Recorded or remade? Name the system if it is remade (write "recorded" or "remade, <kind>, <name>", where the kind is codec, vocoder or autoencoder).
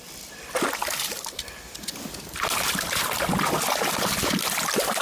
recorded